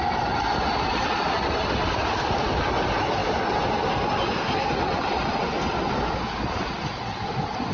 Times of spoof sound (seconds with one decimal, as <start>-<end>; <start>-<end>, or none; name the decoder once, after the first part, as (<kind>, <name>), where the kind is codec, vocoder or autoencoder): none